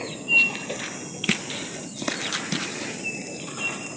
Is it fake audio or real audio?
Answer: real